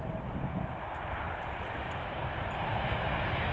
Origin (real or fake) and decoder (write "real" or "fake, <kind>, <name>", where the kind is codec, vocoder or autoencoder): real